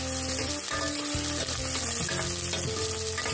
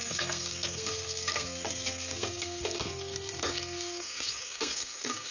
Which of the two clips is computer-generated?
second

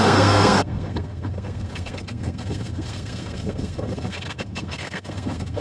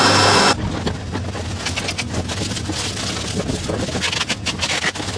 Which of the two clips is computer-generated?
first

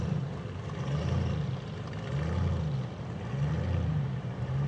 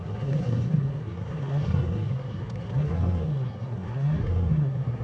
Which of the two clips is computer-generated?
second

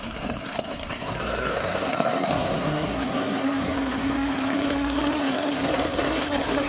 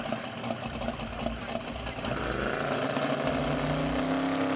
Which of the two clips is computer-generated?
first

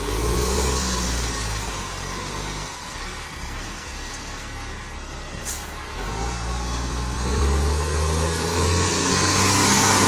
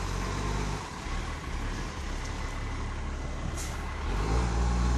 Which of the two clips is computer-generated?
first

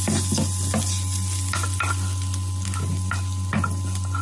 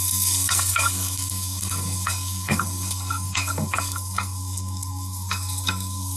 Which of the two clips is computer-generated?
second